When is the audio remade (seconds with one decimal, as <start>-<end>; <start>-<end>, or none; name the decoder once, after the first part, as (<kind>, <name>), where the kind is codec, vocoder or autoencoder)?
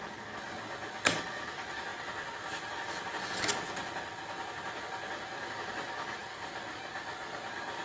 none